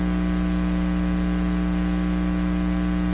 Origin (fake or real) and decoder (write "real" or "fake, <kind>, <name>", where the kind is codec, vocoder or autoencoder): real